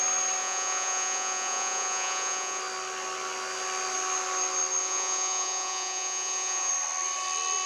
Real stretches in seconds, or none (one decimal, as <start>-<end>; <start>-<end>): 0.0-0.4; 2.6-4.8; 6.7-7.7